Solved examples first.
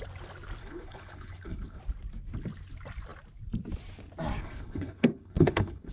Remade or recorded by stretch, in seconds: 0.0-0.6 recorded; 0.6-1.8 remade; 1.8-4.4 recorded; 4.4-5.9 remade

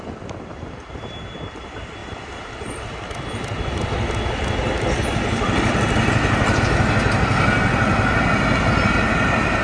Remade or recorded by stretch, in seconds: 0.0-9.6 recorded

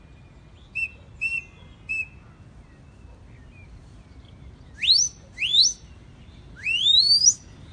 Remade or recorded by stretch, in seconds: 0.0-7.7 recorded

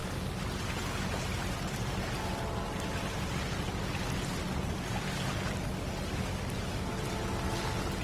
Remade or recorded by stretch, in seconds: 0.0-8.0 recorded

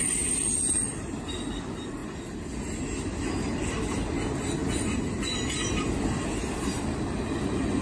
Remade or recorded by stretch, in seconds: 0.0-7.8 recorded

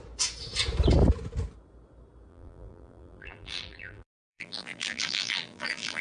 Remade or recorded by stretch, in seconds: 0.0-2.3 recorded; 2.3-6.0 remade